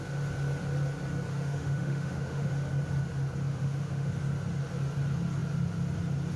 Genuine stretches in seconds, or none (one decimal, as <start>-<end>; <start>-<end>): 0.0-1.3; 2.5-3.5; 4.1-6.4